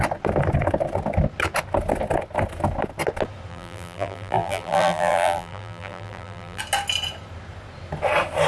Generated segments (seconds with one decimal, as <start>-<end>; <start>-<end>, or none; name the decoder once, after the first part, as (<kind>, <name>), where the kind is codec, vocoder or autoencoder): 3.5-6.6 (vocoder, BigVGAN v2)